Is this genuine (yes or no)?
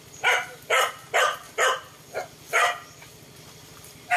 yes